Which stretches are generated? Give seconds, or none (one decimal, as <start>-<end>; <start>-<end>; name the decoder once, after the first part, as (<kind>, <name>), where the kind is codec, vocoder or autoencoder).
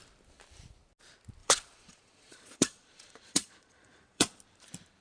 1.4-4.4 (vocoder, Vocos)